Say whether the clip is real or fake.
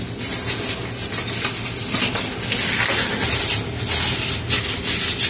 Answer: real